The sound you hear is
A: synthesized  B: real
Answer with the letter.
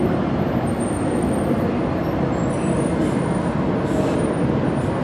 B